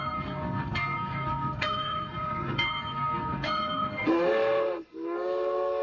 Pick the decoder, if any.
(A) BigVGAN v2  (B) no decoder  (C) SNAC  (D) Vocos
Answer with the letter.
C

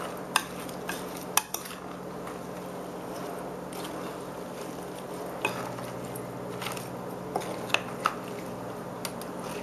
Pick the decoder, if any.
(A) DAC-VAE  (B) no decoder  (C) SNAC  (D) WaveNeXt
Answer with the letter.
B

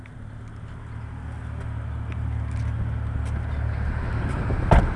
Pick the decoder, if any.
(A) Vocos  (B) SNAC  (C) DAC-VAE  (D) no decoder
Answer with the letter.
D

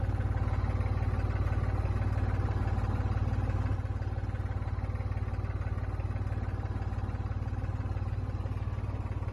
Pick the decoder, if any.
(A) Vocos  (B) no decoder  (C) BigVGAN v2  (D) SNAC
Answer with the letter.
B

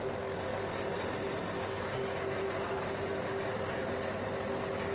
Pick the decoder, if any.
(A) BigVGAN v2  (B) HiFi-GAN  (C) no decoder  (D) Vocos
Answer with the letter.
C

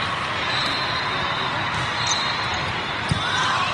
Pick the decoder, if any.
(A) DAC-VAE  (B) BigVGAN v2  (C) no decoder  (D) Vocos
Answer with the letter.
C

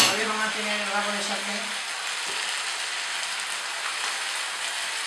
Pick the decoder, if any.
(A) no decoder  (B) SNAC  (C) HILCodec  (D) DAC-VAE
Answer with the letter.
A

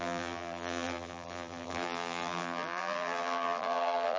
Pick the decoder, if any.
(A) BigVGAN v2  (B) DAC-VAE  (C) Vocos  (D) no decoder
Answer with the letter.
A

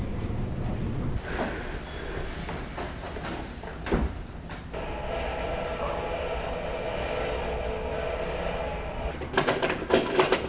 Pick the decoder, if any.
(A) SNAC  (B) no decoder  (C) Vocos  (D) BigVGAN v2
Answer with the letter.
B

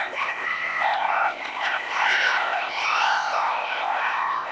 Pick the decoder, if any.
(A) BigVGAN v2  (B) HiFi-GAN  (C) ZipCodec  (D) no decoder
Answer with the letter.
C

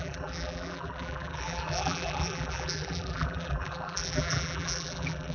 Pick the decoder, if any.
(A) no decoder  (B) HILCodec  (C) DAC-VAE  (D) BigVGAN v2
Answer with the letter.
D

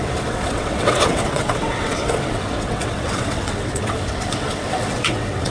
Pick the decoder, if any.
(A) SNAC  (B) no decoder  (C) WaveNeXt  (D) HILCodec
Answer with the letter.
C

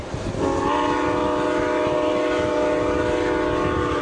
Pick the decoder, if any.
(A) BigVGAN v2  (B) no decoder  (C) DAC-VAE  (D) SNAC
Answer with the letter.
B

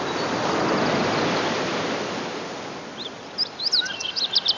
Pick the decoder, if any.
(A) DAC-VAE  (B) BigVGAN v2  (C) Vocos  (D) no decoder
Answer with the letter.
D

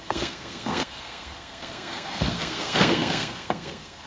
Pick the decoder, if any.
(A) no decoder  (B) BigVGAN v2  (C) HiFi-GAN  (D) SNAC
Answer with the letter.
D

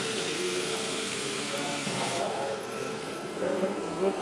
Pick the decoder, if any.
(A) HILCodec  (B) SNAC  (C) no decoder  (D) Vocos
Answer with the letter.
B